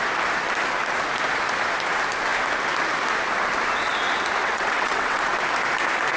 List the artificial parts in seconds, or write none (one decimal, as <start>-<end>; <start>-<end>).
4.4-5.2